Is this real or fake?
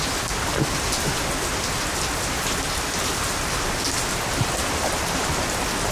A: real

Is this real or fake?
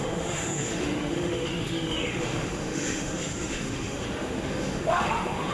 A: fake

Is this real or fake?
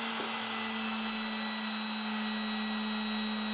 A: real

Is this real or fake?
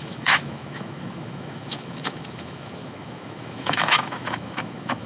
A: fake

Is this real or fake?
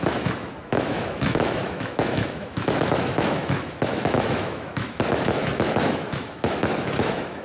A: fake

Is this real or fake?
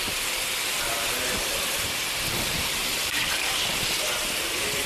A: real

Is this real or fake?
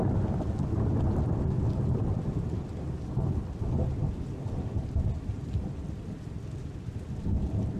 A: real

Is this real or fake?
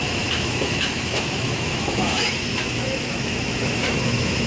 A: fake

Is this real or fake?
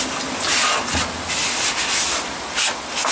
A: real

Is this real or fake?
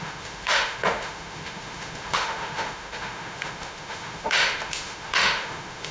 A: fake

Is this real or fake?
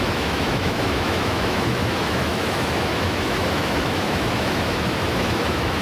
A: fake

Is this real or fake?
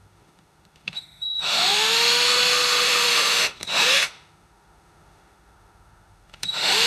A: fake